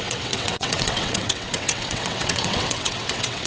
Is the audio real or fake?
fake